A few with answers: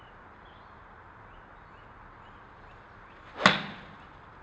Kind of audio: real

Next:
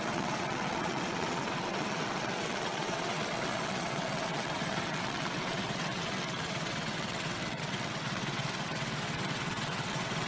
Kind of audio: fake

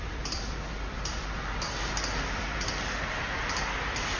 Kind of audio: fake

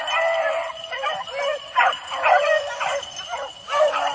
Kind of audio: real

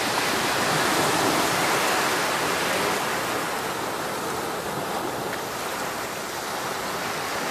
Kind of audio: real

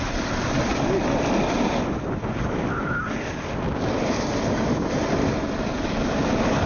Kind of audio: real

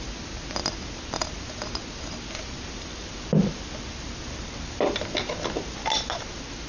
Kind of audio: real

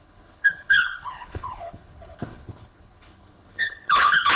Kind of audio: fake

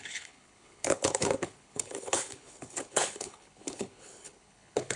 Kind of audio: fake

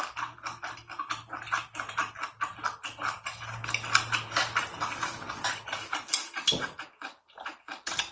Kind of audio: real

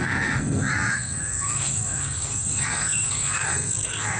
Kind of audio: fake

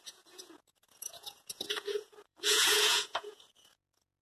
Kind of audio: fake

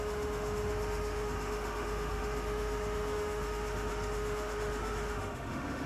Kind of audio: fake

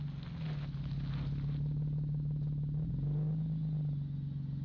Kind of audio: real